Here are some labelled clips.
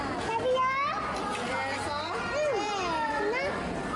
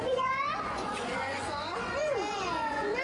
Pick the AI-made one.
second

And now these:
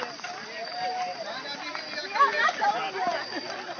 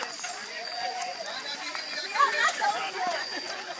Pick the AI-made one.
second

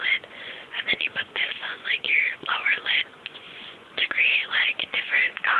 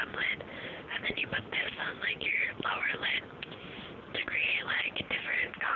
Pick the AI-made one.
first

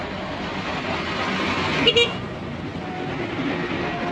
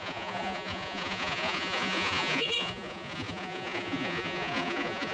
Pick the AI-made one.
second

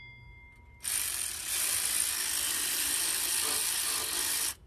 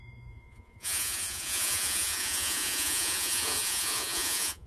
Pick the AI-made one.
second